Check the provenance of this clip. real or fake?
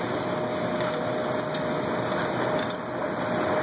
real